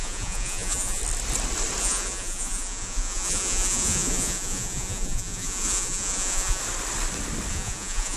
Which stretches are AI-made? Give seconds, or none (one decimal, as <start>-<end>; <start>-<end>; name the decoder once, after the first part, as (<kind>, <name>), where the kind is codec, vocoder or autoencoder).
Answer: 0.0-1.0 (vocoder, Vocos); 1.8-6.6; 7.5-8.2